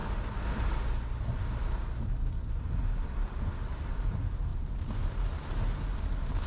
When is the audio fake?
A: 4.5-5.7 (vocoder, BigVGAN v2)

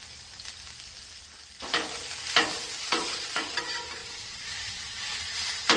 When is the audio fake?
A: 2.8-3.5 (vocoder, Vocos); 4.0-5.2

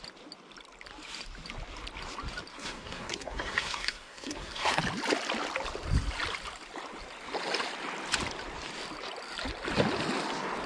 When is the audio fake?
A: 2.5-4.8 (codec, SNAC)

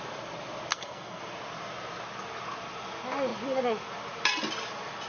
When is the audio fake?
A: 0.7-1.2 (codec, SNAC)

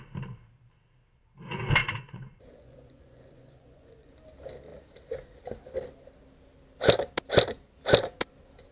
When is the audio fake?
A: 1.8-4.1 (vocoder, Vocos)

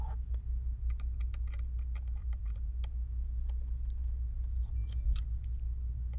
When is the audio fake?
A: 2.2-2.7 (vocoder, BigVGAN v2)

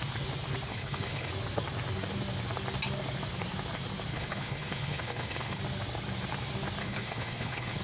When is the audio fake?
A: 0.7-1.3 (codec, HILCodec); 4.1-5.6; 6.8-7.8

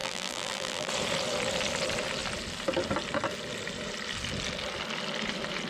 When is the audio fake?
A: 0.0-0.9 (vocoder, BigVGAN v2)